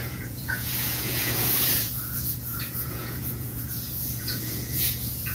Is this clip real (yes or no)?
no